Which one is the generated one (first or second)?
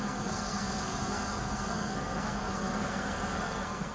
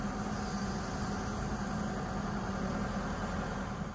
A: first